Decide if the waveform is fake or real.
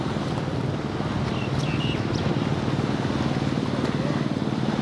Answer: real